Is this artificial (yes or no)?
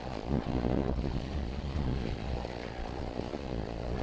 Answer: yes